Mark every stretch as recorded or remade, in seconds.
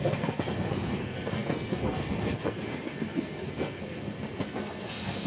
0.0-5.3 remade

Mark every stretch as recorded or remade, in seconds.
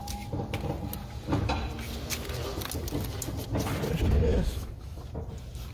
0.0-4.3 recorded; 4.3-5.0 remade; 5.0-5.7 recorded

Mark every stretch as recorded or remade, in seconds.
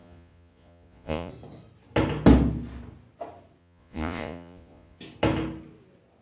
0.0-1.3 remade; 1.3-3.6 recorded; 3.6-5.0 remade; 5.0-6.2 recorded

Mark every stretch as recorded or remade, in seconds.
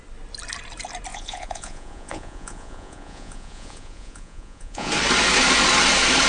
0.0-1.1 recorded; 1.1-4.9 remade; 4.9-6.3 recorded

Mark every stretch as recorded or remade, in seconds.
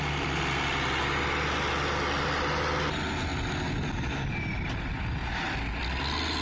0.0-6.4 recorded